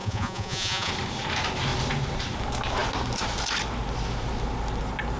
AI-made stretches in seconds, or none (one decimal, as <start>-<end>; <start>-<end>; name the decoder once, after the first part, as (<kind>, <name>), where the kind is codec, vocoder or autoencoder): 0.0-0.9 (vocoder, Vocos)